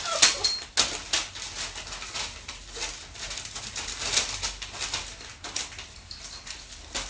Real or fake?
real